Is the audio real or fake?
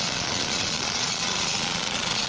fake